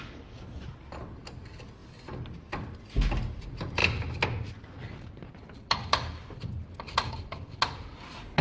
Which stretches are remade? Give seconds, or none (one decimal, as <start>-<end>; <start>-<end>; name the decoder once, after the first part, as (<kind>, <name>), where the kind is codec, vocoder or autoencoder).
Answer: 3.8-7.1 (vocoder, BigVGAN v2)